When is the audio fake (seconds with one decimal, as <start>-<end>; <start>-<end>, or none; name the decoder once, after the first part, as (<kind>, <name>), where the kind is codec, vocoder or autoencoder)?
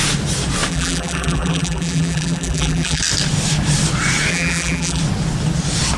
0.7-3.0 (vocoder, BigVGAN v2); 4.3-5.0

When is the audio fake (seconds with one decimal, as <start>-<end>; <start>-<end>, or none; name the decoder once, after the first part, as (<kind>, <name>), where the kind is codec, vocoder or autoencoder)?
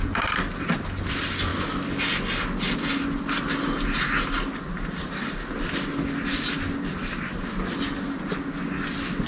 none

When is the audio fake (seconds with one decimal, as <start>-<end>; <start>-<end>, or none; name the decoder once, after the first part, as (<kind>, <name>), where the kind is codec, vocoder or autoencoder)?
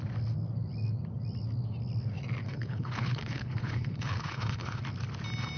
2.4-4.8 (codec, HILCodec)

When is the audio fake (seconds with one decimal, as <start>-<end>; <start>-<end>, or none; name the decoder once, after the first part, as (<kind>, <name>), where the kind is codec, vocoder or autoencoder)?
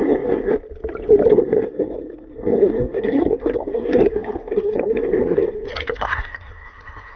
0.0-0.5 (codec, SNAC); 1.3-7.2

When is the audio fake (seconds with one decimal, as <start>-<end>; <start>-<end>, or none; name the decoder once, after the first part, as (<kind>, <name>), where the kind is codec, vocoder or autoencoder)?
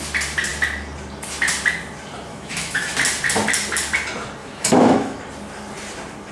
2.3-2.9 (autoencoder, DAC-VAE); 4.4-5.2